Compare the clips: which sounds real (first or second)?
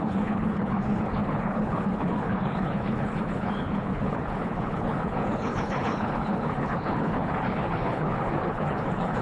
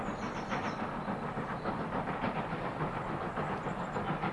second